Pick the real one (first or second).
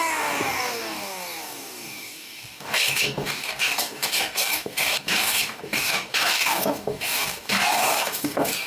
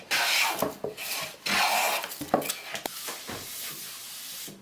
second